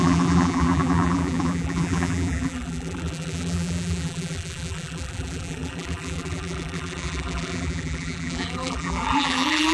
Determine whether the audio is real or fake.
fake